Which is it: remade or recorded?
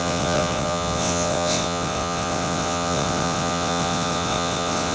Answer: remade